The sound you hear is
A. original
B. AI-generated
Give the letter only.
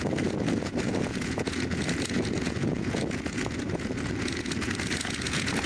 B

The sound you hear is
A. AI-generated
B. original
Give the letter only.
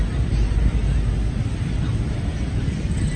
B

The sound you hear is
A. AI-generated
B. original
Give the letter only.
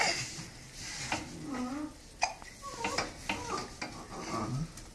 B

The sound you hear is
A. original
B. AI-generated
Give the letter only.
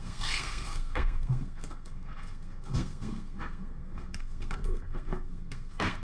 B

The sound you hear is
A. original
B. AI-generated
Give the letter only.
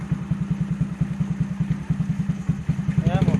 A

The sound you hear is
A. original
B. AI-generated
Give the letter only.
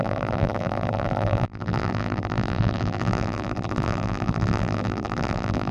B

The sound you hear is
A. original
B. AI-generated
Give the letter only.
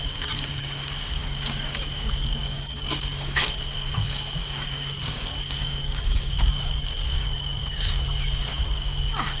B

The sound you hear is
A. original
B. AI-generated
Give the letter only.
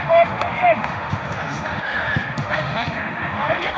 B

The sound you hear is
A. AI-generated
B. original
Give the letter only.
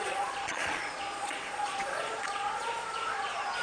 A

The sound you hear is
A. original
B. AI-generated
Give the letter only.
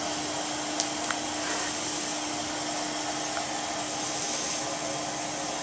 A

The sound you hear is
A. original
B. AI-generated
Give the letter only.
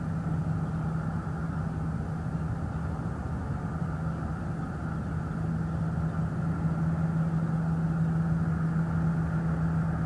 A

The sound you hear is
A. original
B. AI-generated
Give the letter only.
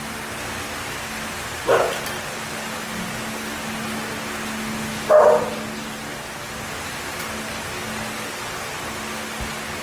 A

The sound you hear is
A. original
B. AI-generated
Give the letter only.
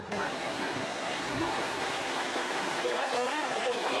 B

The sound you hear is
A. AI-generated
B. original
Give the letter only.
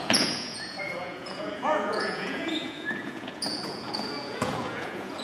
A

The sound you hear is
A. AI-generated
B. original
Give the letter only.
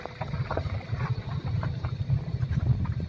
B